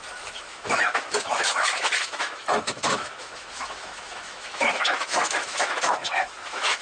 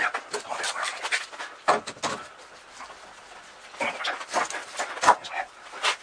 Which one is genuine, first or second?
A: second